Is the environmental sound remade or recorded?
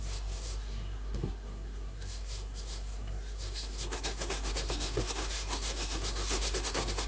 remade